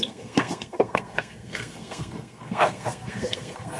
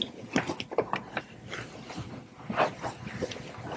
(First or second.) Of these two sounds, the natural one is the second